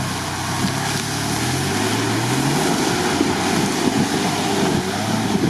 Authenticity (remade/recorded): recorded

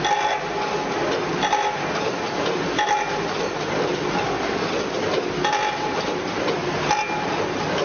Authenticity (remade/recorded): recorded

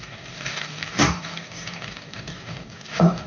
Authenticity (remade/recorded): remade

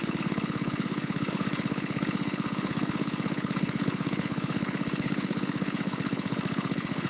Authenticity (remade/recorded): remade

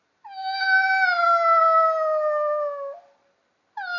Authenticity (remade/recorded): recorded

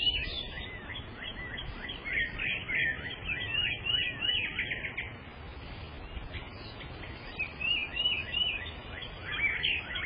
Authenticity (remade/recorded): recorded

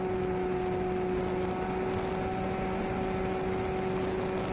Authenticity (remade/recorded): recorded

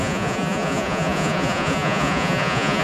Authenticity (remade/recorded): remade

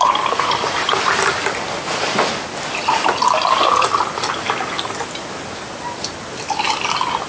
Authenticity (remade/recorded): recorded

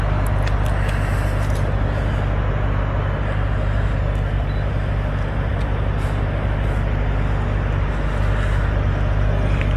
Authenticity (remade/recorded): recorded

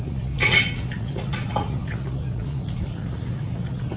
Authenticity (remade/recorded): remade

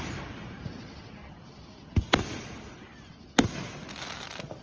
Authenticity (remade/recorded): recorded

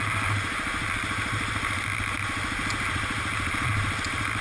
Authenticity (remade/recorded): recorded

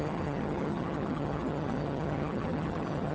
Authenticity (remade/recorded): remade